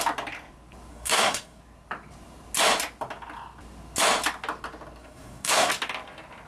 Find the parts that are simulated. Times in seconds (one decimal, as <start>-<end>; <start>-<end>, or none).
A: 0.9-1.6; 5.0-5.7